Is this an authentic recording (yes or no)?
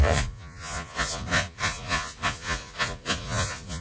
no